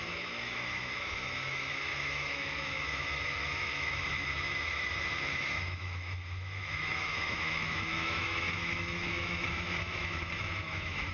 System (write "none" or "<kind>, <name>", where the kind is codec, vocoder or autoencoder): autoencoder, DAC-VAE